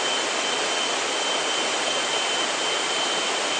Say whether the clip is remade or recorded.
recorded